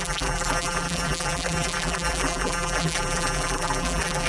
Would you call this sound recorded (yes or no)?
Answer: no